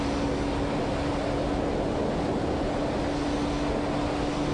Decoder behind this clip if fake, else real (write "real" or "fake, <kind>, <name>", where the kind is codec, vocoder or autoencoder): real